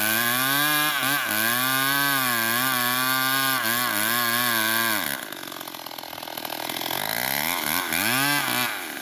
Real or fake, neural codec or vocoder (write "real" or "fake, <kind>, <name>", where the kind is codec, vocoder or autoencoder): real